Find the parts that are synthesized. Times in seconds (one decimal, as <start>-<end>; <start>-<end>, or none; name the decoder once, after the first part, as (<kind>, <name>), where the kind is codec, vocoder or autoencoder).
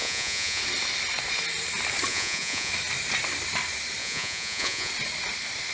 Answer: 0.0-0.6 (vocoder, Vocos); 2.1-2.7; 4.0-4.9